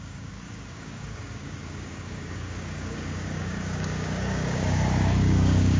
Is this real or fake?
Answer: fake